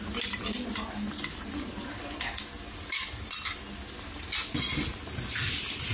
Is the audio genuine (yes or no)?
yes